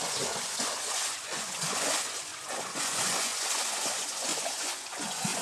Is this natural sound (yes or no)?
no